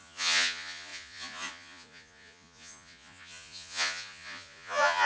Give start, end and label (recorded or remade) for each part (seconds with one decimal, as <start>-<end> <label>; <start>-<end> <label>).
0.0-5.1 remade